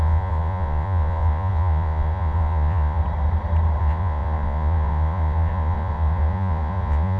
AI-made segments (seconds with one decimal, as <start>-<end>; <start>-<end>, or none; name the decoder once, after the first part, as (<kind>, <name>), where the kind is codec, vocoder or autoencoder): 0.0-3.0 (vocoder, Vocos); 3.8-7.2